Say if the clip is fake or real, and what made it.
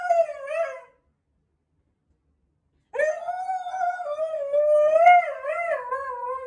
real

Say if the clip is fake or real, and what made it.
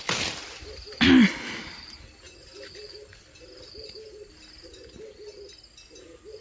real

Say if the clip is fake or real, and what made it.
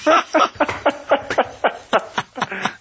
real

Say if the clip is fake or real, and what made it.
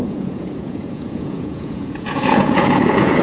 fake, vocoder, Vocos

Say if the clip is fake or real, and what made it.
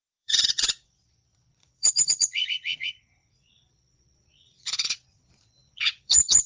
fake, vocoder, Vocos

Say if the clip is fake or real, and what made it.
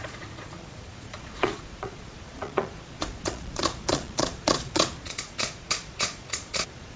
fake, vocoder, Vocos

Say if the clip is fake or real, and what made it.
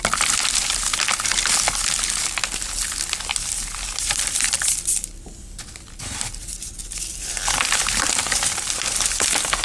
real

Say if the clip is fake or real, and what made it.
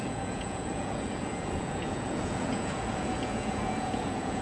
fake, vocoder, Vocos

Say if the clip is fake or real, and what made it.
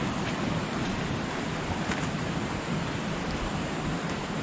real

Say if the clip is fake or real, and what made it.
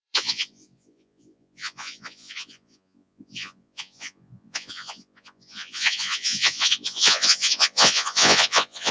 fake, vocoder, Vocos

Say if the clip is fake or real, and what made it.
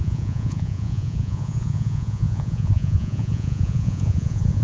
fake, vocoder, Vocos